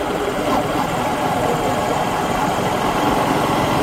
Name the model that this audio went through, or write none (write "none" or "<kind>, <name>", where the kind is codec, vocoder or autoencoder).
vocoder, BigVGAN v2